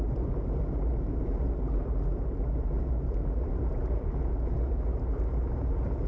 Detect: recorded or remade remade